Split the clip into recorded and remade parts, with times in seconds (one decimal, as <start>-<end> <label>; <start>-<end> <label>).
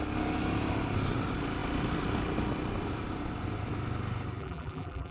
0.0-4.4 recorded; 4.4-5.1 remade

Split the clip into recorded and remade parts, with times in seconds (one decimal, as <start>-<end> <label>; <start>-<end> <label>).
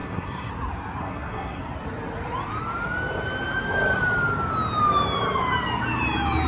0.0-0.5 remade; 0.5-1.0 recorded; 1.0-1.6 remade; 1.6-6.5 recorded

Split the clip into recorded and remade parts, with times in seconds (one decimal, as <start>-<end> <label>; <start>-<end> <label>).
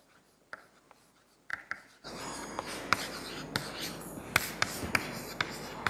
0.0-5.9 recorded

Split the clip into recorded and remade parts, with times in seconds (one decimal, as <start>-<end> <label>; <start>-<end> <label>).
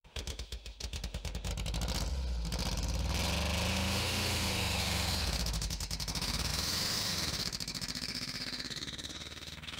0.0-1.5 remade; 1.5-3.7 recorded; 3.7-9.8 remade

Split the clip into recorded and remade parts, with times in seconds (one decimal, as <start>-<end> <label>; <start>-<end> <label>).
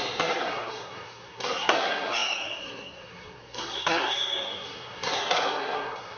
0.0-6.2 remade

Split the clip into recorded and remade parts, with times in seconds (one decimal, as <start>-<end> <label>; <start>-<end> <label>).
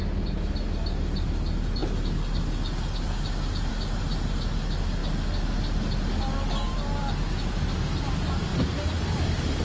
0.0-9.6 recorded